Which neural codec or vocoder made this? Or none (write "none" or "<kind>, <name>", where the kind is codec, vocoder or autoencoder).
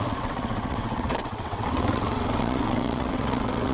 vocoder, WaveNeXt